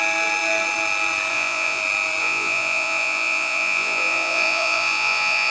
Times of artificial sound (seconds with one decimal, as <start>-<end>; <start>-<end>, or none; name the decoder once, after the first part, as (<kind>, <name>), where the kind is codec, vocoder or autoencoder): 1.3-1.8 (vocoder, Vocos); 2.2-5.5